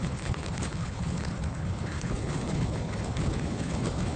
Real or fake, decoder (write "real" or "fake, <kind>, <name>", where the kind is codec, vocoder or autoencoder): fake, codec, HILCodec